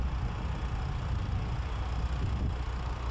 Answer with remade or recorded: recorded